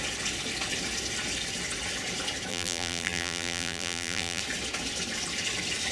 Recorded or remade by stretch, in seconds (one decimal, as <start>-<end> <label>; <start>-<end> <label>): 0.0-2.5 recorded; 2.5-4.4 remade; 4.4-5.9 recorded